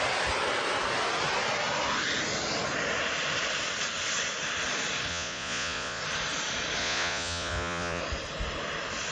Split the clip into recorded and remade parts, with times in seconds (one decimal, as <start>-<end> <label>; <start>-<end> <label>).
0.0-5.1 recorded; 5.1-6.0 remade; 6.0-6.8 recorded; 6.8-8.0 remade; 8.0-9.1 recorded